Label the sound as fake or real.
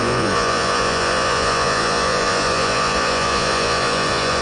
fake